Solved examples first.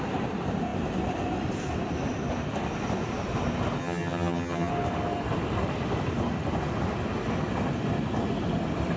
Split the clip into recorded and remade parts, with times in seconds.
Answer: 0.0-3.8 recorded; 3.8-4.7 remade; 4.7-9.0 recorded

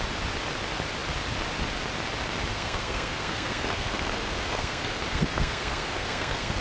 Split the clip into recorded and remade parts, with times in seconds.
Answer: 0.0-2.5 recorded; 2.5-6.6 remade

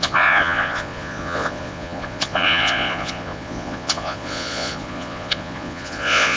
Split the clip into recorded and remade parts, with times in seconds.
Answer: 0.0-6.4 remade

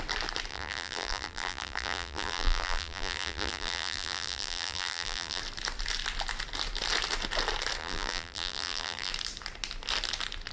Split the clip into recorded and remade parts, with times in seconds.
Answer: 0.0-0.5 recorded; 0.5-5.4 remade; 5.4-7.8 recorded; 7.8-9.1 remade; 9.1-10.5 recorded

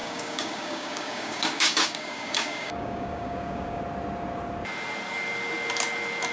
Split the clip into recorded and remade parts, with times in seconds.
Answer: 0.0-3.8 remade; 3.8-6.3 recorded

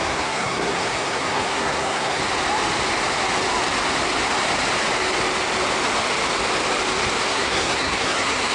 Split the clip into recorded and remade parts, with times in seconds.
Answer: 0.0-2.2 remade; 2.2-7.3 recorded; 7.3-8.5 remade

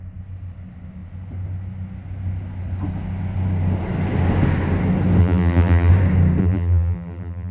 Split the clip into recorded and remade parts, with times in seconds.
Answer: 0.0-5.2 recorded; 5.2-5.9 remade; 5.9-6.4 recorded; 6.4-7.5 remade